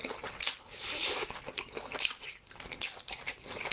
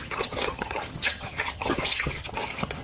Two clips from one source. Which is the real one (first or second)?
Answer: first